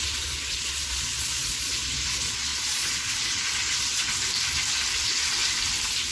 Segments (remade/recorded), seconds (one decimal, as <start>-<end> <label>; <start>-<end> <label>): 0.0-4.1 remade; 4.1-5.0 recorded; 5.0-5.4 remade; 5.4-6.1 recorded